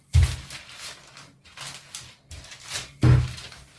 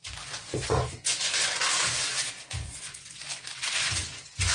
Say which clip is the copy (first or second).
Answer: second